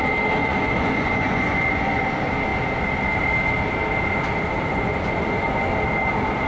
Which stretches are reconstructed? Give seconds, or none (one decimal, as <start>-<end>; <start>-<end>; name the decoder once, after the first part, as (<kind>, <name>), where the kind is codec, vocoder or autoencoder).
0.4-2.0 (vocoder, Vocos); 4.7-5.7